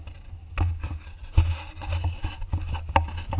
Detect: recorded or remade recorded